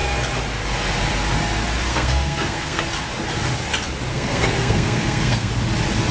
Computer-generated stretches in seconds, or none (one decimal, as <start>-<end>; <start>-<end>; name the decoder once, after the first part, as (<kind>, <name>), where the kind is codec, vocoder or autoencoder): 1.9-2.8 (codec, SNAC); 4.1-5.5